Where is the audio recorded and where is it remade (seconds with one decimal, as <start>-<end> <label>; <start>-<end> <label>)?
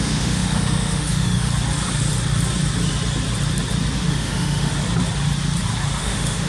0.0-1.5 remade; 1.5-4.1 recorded; 4.1-4.7 remade; 4.7-6.0 recorded; 6.0-6.5 remade